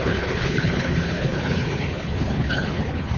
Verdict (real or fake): fake